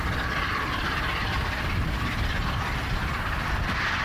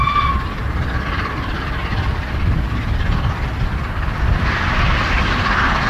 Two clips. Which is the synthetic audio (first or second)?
first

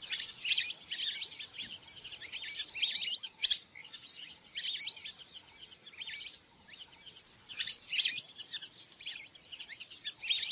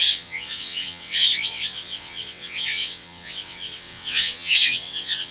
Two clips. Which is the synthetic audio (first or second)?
second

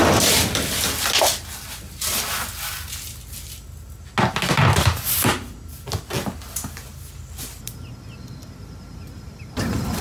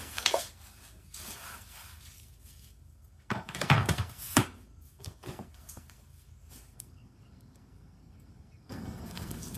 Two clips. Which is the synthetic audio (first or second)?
second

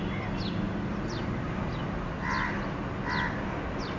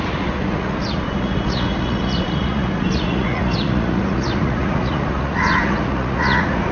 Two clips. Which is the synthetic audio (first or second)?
second